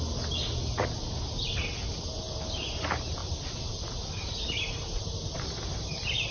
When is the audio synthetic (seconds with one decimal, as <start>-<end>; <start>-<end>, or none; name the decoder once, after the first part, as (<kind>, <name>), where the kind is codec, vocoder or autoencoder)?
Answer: none